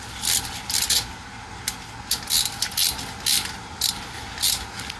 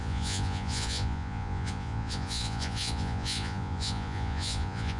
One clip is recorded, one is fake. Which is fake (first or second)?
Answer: second